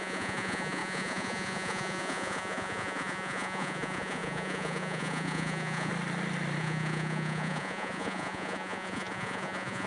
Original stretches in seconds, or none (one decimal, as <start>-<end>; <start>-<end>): 5.9-6.6